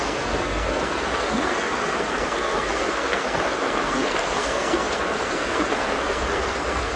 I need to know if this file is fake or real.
fake